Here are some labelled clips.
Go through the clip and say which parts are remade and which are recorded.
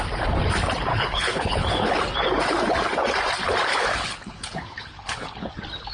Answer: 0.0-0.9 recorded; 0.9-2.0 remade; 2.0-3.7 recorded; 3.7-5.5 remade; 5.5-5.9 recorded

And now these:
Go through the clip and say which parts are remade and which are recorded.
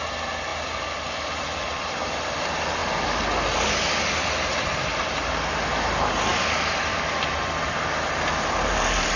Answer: 0.0-0.5 recorded; 0.5-2.4 remade; 2.4-6.3 recorded; 6.3-9.2 remade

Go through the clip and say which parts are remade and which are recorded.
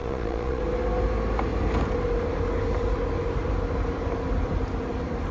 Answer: 0.0-0.6 remade; 0.6-5.3 recorded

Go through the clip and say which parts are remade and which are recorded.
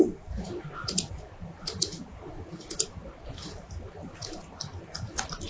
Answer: 0.0-5.5 recorded